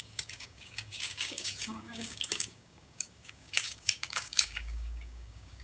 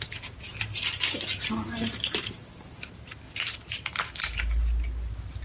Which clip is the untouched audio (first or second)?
second